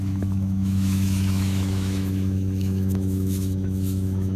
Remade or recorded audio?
remade